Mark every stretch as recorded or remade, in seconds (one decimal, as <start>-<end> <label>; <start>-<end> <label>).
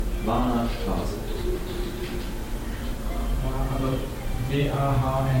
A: 0.0-1.3 recorded; 1.3-4.5 remade; 4.5-5.4 recorded